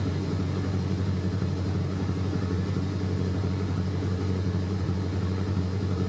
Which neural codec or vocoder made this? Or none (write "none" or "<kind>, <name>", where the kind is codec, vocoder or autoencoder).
vocoder, Vocos